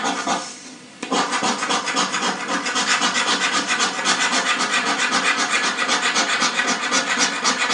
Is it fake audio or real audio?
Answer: real